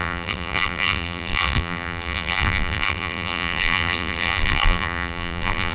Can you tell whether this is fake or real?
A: fake